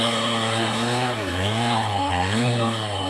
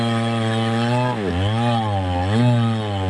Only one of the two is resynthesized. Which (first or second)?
first